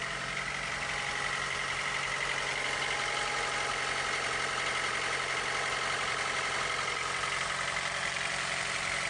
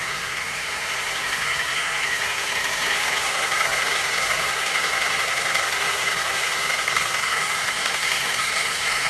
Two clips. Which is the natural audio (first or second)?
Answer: first